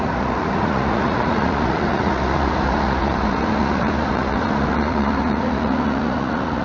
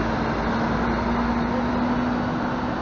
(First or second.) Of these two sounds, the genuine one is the second